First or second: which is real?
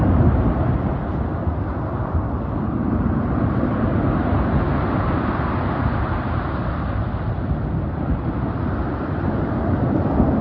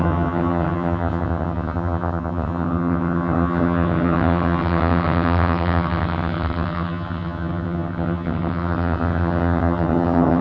first